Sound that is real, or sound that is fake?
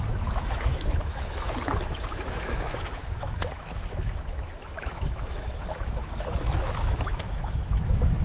fake